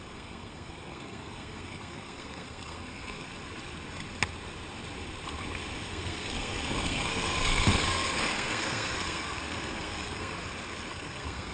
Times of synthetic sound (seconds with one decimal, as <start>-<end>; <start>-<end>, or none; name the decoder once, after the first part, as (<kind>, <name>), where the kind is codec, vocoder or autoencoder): 0.0-3.3 (codec, SNAC); 5.9-10.4; 10.9-11.5